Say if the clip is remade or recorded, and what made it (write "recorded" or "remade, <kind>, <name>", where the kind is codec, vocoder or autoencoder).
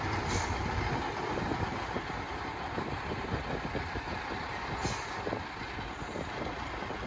recorded